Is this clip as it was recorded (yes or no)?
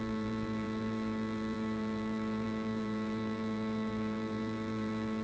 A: no